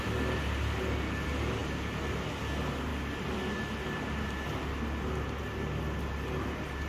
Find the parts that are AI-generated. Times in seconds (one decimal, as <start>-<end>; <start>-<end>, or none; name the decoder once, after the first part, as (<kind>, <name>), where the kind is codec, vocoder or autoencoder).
none